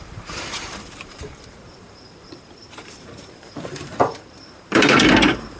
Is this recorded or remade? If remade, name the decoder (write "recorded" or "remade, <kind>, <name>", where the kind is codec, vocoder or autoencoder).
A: remade, vocoder, BigVGAN v2